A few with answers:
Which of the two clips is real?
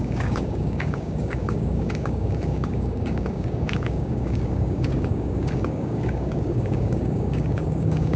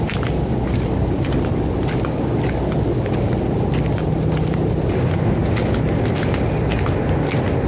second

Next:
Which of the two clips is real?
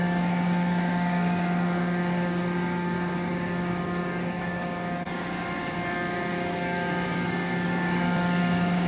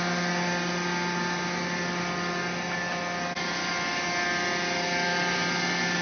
second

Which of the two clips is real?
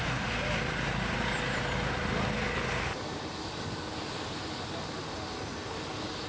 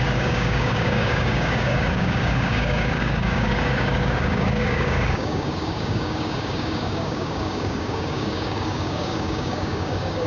first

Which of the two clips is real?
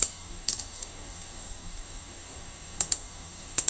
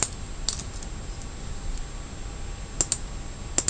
second